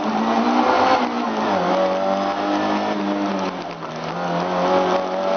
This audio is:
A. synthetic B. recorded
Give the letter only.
B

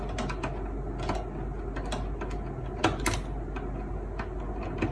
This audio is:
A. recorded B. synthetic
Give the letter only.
A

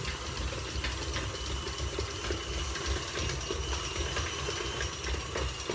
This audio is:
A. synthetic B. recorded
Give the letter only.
B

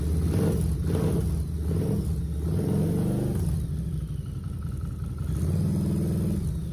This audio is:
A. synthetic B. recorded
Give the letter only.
B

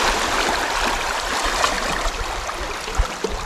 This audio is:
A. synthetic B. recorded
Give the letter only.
B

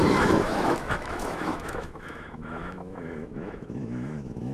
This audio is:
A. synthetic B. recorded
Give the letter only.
A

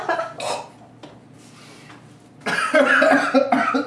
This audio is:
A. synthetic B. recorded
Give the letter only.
B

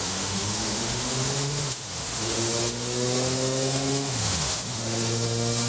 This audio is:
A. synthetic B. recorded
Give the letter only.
A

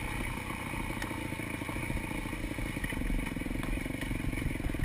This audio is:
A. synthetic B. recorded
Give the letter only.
B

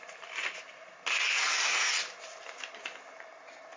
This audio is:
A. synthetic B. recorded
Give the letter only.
B